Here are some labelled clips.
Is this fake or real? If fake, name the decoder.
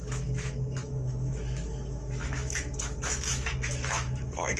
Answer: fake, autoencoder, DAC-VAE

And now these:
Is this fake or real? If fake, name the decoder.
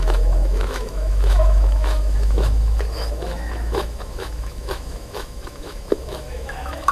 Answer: fake, autoencoder, DAC-VAE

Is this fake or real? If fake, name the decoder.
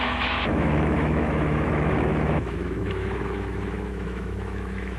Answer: fake, autoencoder, DAC-VAE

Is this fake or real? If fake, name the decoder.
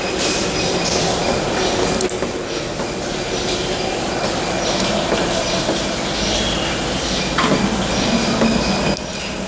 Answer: real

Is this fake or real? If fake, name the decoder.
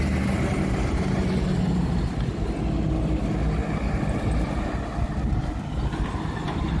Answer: real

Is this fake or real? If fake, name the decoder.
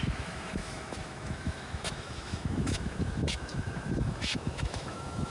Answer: fake, autoencoder, DAC-VAE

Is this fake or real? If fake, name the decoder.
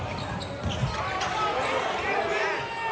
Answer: real